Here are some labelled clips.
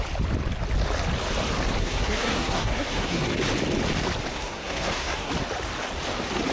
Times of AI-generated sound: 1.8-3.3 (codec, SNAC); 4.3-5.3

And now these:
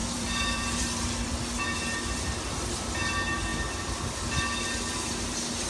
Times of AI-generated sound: 0.0-1.6 (vocoder, BigVGAN v2)

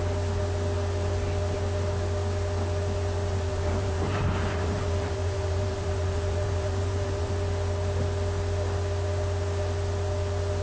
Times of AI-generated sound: 3.3-7.3 (vocoder, BigVGAN v2)

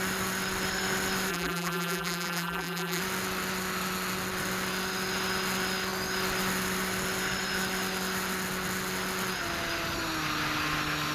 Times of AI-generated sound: 1.3-3.0 (vocoder, BigVGAN v2)

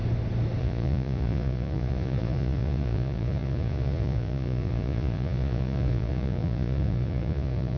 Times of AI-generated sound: 0.6-7.8 (vocoder, Vocos)

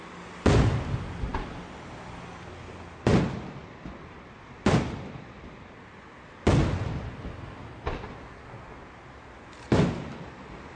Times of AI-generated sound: 1.3-2.0 (vocoder, BigVGAN v2)